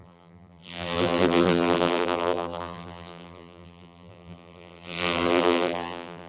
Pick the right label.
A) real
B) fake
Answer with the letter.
B